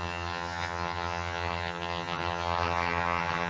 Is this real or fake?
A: fake